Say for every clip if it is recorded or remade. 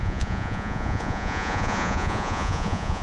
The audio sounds remade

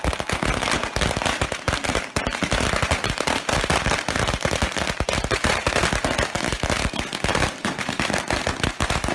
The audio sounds recorded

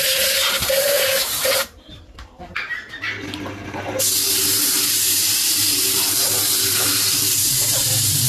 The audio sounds remade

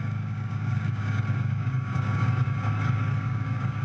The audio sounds remade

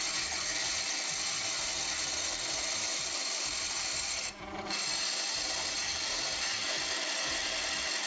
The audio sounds remade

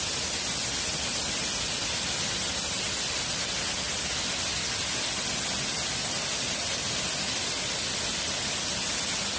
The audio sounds recorded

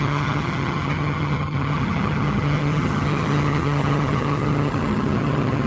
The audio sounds remade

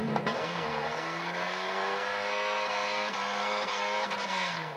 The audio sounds remade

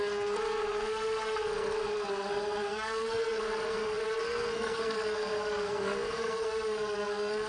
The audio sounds remade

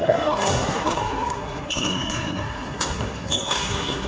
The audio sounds remade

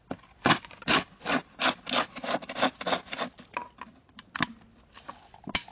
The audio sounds recorded